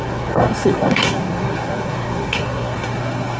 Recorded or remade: remade